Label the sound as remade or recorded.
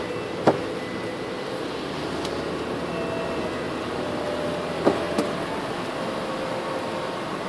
recorded